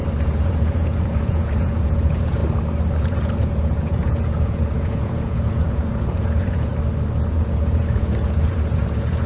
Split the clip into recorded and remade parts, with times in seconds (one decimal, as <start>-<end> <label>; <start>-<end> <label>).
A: 0.0-2.4 remade; 2.4-3.0 recorded; 3.0-6.7 remade; 6.7-7.3 recorded; 7.3-9.3 remade